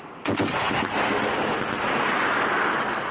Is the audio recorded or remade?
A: recorded